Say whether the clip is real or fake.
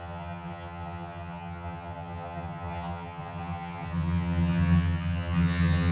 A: fake